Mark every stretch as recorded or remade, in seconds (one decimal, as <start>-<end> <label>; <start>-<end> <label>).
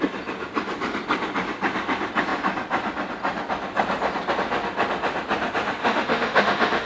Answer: 0.0-5.8 recorded; 5.8-6.9 remade